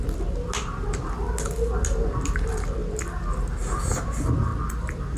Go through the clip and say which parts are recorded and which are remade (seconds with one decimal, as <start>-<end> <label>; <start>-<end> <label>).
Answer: 0.0-5.2 recorded